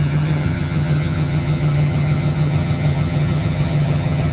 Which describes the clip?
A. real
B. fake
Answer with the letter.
B